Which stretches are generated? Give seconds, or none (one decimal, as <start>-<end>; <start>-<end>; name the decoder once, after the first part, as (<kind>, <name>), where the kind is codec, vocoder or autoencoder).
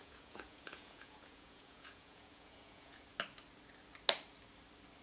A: 0.0-3.0 (vocoder, Vocos)